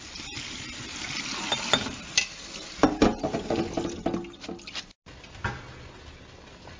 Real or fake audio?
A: real